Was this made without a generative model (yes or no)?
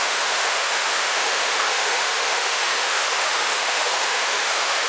no